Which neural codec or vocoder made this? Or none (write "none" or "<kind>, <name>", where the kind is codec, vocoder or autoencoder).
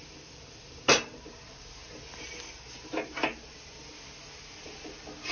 none